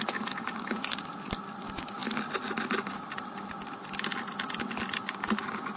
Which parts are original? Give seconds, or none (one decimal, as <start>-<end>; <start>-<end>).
0.0-5.8